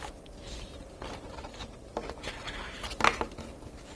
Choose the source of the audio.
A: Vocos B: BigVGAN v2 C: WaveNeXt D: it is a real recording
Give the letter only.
D